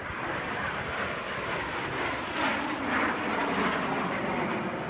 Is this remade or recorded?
recorded